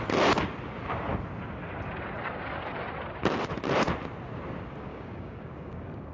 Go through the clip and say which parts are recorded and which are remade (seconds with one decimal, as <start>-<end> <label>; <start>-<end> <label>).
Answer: 0.0-4.9 recorded; 4.9-6.1 remade